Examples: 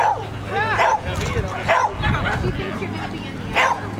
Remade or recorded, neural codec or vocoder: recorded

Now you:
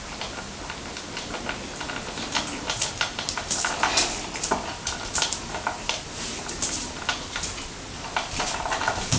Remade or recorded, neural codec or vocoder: recorded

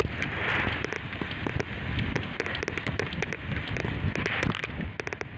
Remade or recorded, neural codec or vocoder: recorded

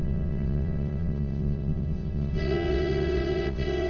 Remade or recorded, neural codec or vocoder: remade, vocoder, WaveNeXt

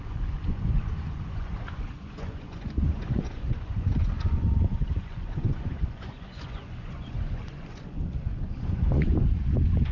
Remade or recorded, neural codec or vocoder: remade, vocoder, Vocos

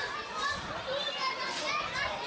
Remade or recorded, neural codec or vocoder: recorded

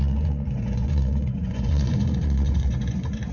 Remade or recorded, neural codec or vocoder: remade, vocoder, Vocos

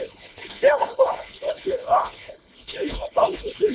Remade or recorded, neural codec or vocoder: remade, codec, HILCodec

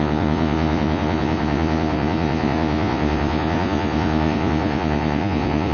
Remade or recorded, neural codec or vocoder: remade, vocoder, Vocos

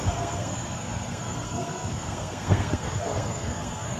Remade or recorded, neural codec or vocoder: remade, codec, SNAC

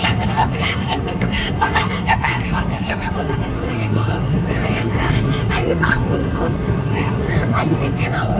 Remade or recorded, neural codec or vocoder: remade, codec, SNAC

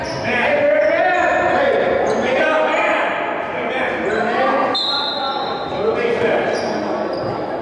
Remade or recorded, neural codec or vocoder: recorded